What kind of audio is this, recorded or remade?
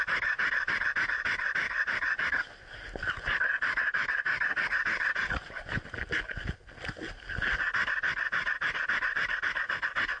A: recorded